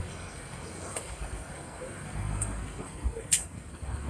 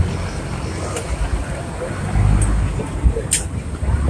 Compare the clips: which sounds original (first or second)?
second